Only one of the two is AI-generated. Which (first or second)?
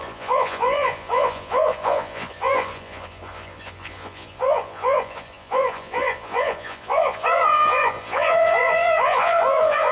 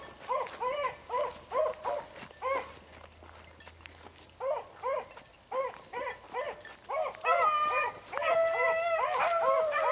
first